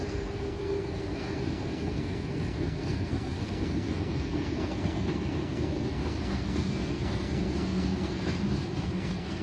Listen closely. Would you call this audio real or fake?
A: fake